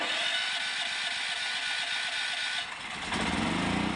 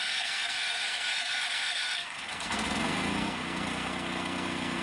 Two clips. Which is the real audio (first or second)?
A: first